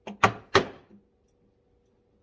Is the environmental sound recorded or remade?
recorded